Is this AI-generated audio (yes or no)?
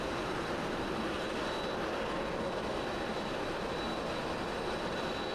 no